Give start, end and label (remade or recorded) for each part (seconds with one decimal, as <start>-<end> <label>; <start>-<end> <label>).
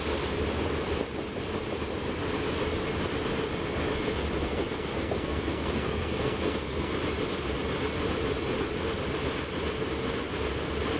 0.0-4.4 recorded; 4.4-6.9 remade; 6.9-11.0 recorded